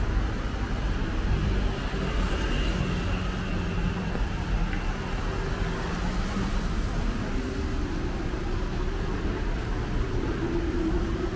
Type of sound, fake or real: real